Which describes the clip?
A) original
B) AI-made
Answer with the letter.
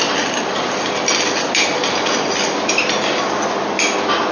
A